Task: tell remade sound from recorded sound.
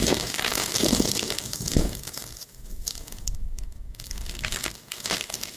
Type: remade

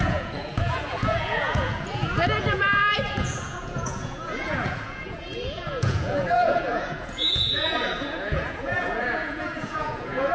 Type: remade